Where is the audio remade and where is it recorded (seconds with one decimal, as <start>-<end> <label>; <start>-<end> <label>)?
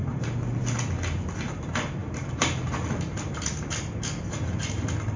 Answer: 0.0-5.2 recorded